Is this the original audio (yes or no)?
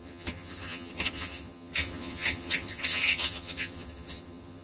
no